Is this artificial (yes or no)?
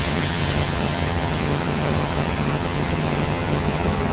yes